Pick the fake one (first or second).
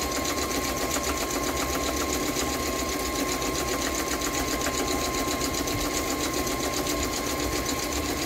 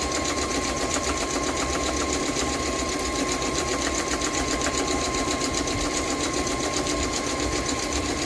second